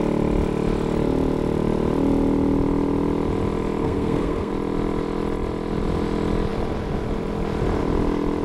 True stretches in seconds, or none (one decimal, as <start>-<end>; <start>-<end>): 0.0-3.8; 4.5-8.4